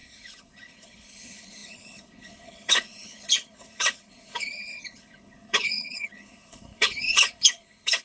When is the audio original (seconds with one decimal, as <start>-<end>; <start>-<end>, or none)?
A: none